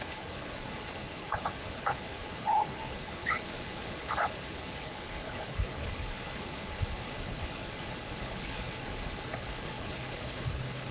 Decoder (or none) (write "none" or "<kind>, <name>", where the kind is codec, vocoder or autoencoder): codec, HILCodec